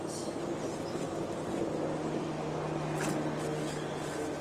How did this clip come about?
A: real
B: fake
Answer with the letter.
A